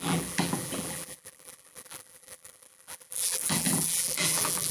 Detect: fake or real fake